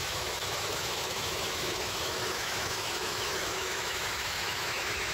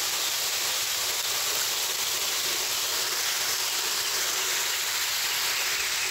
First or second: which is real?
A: second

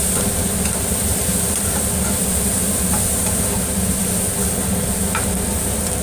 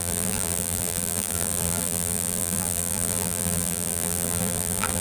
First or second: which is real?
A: first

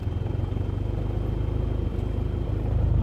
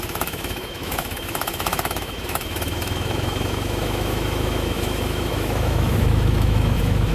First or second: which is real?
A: first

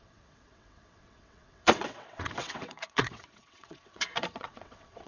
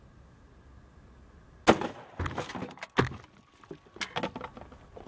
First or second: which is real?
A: second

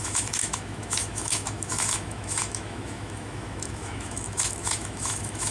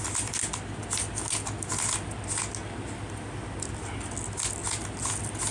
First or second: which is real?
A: second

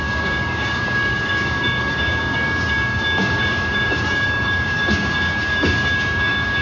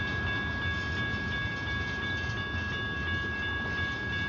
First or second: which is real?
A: second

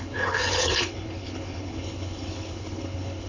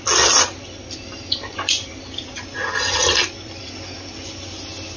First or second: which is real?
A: second